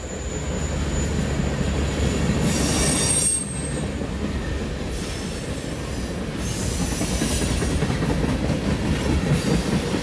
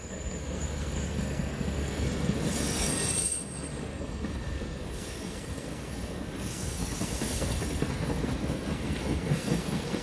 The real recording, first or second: first